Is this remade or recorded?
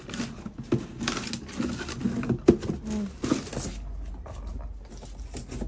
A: recorded